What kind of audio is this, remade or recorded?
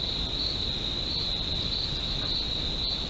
recorded